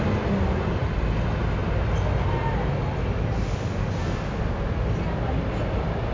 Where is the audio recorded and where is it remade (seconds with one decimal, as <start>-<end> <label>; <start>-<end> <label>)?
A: 0.0-6.1 recorded